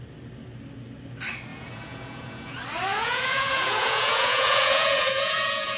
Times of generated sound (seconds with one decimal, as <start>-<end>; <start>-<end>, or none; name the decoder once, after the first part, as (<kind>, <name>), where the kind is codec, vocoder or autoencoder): 1.5-2.5 (vocoder, Vocos); 2.9-5.8